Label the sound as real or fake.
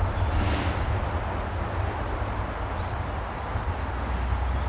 real